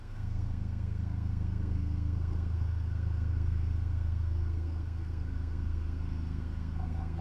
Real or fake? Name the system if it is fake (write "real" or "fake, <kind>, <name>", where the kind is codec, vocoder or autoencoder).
fake, codec, SNAC